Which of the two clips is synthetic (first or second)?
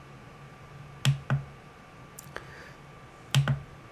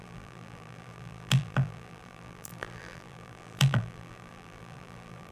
second